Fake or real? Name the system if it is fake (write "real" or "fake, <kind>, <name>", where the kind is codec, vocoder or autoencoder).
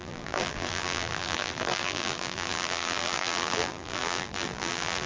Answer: fake, vocoder, BigVGAN v2